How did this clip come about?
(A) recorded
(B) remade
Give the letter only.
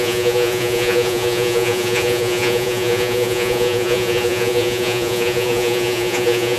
B